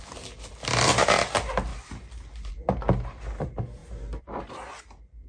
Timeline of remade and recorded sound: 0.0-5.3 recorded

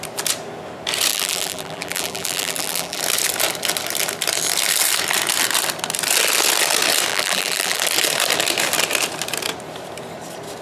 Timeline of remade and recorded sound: 0.0-1.1 recorded; 1.1-3.0 remade; 3.0-7.1 recorded; 7.1-7.8 remade; 7.8-10.6 recorded

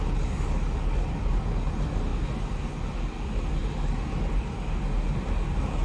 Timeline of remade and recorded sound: 0.0-5.8 recorded

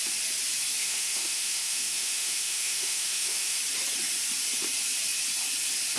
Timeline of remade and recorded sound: 0.0-0.8 recorded; 0.8-3.6 remade; 3.6-6.0 recorded

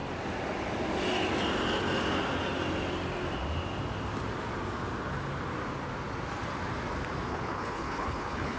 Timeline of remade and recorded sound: 0.0-7.3 recorded; 7.3-8.6 remade

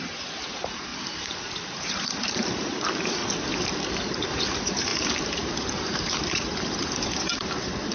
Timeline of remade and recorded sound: 0.0-3.2 remade; 3.2-3.9 recorded; 3.9-7.9 remade

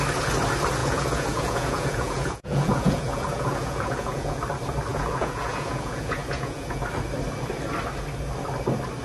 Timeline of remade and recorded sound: 0.0-0.8 recorded; 0.8-4.4 remade; 4.4-4.9 recorded; 4.9-6.8 remade; 6.8-9.0 recorded

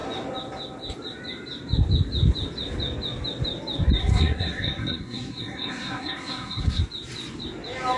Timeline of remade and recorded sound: 0.0-4.0 recorded; 4.0-6.8 remade; 6.8-8.0 recorded